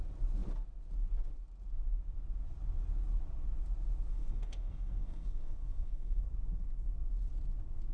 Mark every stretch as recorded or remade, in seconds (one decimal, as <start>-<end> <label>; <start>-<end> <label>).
0.0-4.1 recorded; 4.1-6.2 remade; 6.2-7.9 recorded